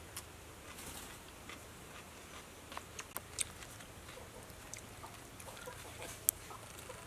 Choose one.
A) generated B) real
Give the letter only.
B